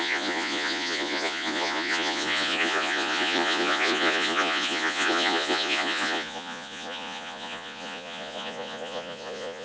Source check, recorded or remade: remade